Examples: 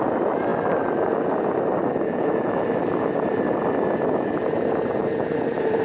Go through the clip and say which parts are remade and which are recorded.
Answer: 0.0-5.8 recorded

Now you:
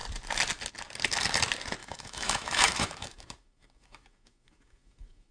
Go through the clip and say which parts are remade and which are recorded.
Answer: 0.0-1.8 recorded; 1.8-5.3 remade

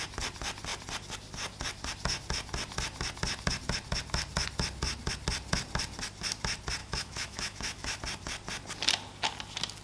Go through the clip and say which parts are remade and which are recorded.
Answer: 0.0-6.8 recorded; 6.8-8.0 remade; 8.0-9.8 recorded

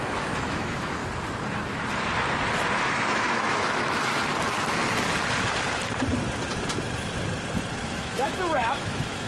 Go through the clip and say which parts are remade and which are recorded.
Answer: 0.0-1.0 remade; 1.0-2.9 recorded; 2.9-4.2 remade; 4.2-7.8 recorded; 7.8-9.3 remade

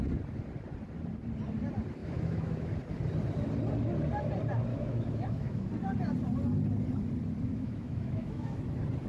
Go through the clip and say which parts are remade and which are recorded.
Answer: 0.0-2.0 recorded; 2.0-2.7 remade; 2.7-4.7 recorded; 4.7-5.7 remade; 5.7-7.5 recorded; 7.5-8.7 remade; 8.7-9.1 recorded

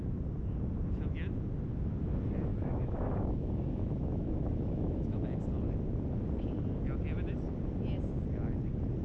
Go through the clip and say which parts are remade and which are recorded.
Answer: 0.0-2.5 recorded; 2.5-5.2 remade; 5.2-9.0 recorded